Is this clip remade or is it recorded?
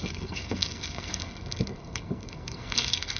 remade